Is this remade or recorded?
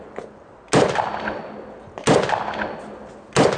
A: recorded